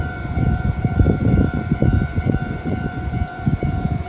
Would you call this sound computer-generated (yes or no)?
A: yes